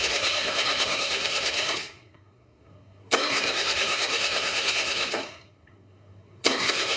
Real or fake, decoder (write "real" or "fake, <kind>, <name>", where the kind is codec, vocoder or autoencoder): fake, codec, SNAC